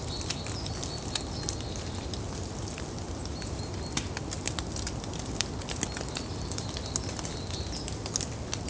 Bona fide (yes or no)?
yes